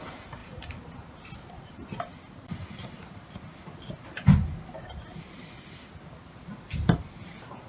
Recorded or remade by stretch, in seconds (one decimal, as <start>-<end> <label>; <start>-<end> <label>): 0.0-7.7 recorded